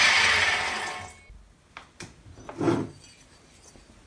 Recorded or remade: recorded